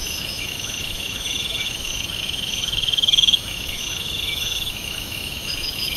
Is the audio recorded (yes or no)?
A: no